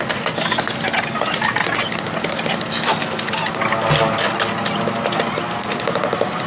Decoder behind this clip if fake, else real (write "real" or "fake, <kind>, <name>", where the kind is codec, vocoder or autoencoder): real